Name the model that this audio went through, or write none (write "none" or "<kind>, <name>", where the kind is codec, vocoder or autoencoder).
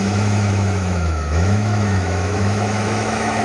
autoencoder, DAC-VAE